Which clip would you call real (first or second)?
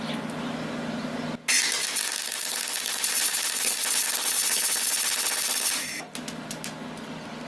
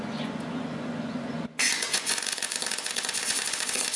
first